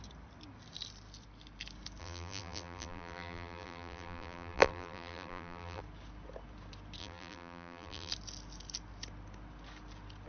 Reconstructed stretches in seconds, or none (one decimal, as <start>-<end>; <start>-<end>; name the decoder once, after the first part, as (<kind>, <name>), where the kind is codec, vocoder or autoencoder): 2.0-5.8 (vocoder, BigVGAN v2); 7.0-8.1